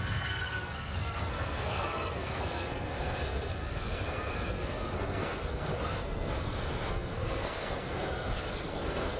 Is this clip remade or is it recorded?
remade